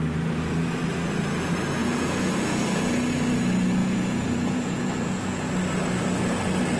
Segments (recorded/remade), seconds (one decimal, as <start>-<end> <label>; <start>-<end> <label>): 0.0-1.8 recorded; 1.8-2.9 remade; 2.9-3.8 recorded; 3.8-5.5 remade; 5.5-6.8 recorded